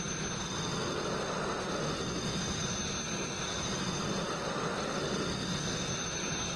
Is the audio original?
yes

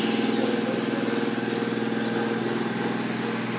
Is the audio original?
yes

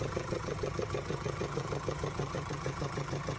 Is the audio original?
no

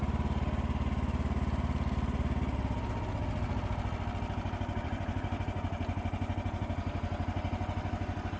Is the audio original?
yes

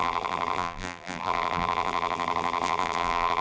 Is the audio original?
no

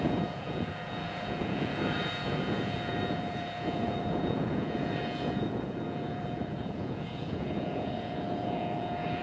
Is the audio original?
no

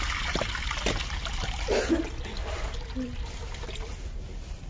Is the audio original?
yes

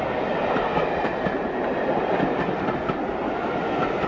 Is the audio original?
yes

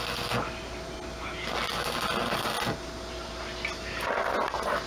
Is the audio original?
yes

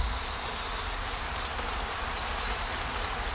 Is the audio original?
yes